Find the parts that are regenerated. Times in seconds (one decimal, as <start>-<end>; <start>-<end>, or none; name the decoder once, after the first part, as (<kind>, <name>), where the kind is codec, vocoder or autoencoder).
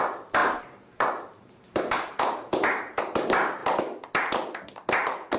0.4-3.0 (vocoder, BigVGAN v2)